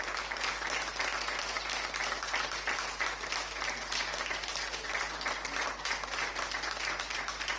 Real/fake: real